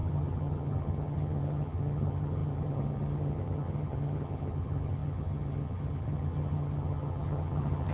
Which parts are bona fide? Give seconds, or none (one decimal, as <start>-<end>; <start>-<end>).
none